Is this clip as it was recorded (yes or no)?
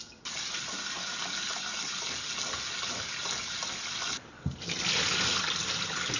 yes